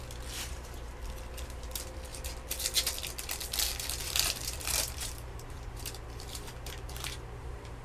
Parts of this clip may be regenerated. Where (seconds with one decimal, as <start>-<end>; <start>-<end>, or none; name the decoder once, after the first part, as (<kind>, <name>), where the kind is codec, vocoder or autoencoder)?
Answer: 4.0-7.8 (vocoder, BigVGAN v2)